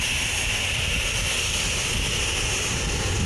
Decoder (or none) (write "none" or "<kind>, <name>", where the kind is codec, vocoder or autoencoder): none